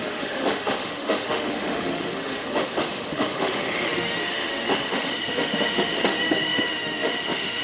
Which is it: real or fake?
fake